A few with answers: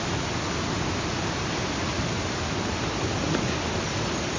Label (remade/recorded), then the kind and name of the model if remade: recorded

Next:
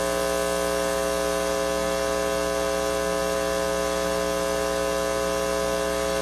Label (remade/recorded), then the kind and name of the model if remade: recorded